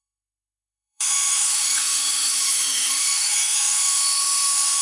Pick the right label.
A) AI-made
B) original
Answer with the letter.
A